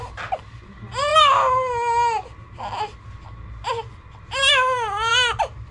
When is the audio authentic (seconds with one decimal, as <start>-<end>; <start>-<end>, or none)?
0.0-5.7